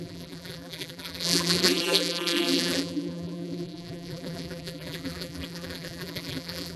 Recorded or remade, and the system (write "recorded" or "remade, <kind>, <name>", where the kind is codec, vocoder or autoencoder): remade, vocoder, BigVGAN v2